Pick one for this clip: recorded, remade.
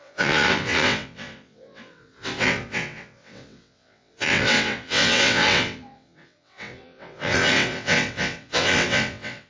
remade